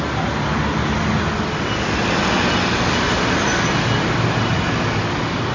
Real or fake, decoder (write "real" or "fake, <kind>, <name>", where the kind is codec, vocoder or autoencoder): real